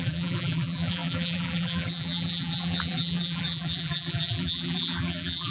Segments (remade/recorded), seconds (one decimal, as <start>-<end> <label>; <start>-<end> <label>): 0.0-5.5 remade